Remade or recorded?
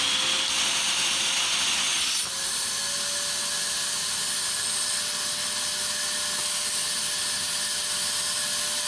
recorded